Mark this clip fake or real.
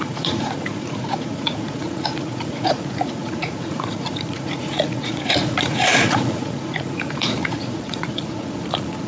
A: fake